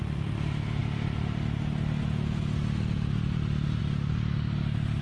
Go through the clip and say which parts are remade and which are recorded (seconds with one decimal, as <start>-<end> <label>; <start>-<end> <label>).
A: 0.0-5.0 recorded